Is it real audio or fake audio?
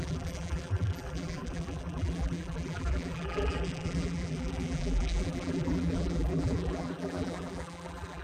fake